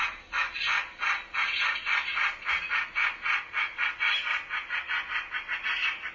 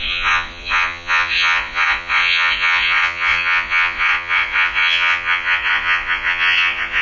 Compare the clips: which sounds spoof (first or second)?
second